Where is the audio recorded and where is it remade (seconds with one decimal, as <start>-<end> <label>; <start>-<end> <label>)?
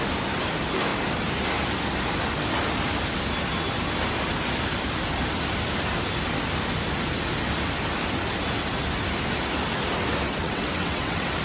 0.0-10.4 recorded; 10.4-11.4 remade